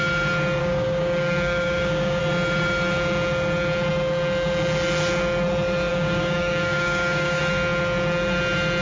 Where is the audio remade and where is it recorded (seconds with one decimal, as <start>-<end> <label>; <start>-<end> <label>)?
0.0-0.6 recorded; 0.6-2.2 remade; 2.2-5.9 recorded; 5.9-7.4 remade; 7.4-8.8 recorded